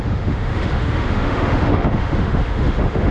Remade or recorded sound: remade